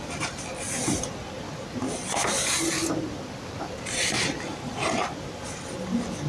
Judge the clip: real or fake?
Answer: real